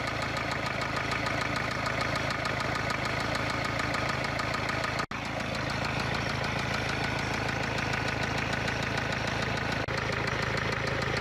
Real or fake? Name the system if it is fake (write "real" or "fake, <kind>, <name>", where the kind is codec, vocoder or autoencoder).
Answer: real